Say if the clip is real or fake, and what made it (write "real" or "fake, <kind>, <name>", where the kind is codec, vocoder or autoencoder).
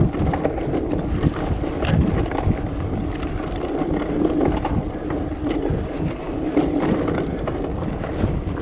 real